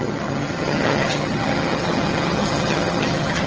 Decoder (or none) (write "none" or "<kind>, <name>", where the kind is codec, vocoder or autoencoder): vocoder, HiFi-GAN